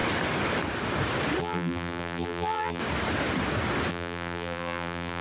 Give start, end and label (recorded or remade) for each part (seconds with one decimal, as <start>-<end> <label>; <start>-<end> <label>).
0.0-1.4 recorded; 1.4-2.8 remade; 2.8-3.9 recorded; 3.9-5.2 remade